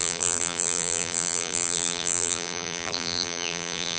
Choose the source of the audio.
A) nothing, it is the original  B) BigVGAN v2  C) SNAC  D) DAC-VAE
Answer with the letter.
B